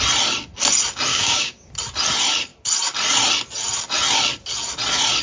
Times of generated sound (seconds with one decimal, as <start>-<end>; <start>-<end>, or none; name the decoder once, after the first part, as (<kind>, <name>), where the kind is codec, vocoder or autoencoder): 1.1-1.7 (codec, DAC)